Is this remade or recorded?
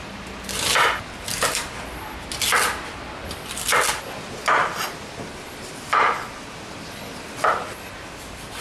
recorded